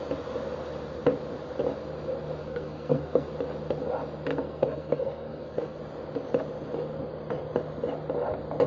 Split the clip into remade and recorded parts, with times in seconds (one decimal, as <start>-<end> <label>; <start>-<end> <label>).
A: 0.0-2.4 recorded; 2.4-3.3 remade; 3.3-4.3 recorded; 4.3-5.8 remade; 5.8-8.7 recorded